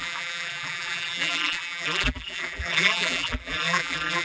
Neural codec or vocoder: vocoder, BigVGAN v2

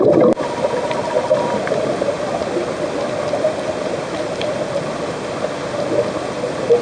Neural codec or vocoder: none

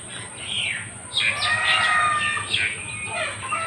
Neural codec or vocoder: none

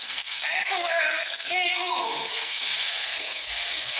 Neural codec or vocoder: codec, SNAC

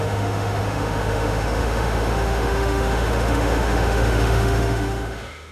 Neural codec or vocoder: autoencoder, DAC-VAE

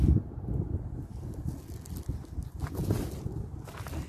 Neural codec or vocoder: none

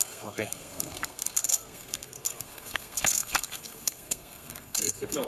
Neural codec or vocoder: codec, SNAC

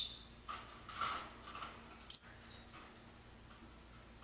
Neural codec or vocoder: none